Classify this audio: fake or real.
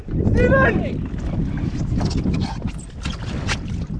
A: real